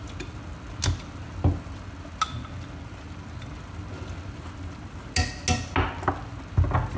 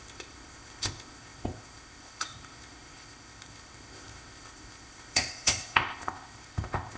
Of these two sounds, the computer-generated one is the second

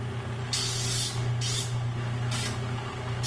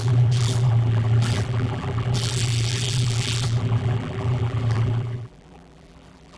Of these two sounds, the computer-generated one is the second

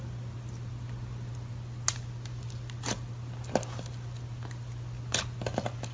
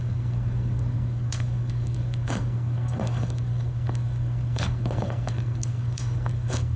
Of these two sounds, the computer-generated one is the second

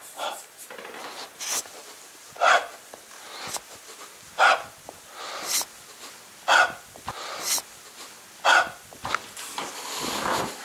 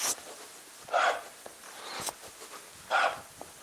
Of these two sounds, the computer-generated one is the first